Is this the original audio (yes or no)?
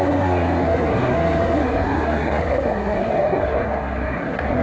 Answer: no